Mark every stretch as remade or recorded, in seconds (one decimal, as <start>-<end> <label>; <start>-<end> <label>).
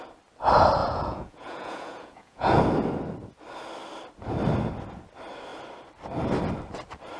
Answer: 0.0-0.8 recorded; 0.8-2.6 remade; 2.6-7.2 recorded